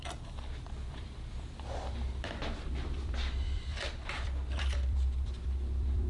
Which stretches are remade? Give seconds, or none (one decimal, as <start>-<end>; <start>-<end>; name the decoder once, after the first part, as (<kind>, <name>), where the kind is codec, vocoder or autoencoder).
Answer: 0.0-6.1 (vocoder, BigVGAN v2)